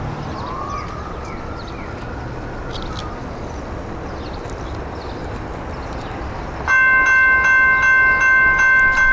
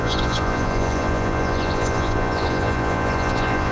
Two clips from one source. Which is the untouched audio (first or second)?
first